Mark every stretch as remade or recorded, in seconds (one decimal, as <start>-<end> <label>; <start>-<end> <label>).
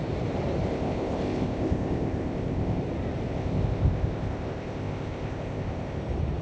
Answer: 0.0-0.7 recorded; 0.7-2.8 remade; 2.8-3.3 recorded; 3.3-6.0 remade; 6.0-6.4 recorded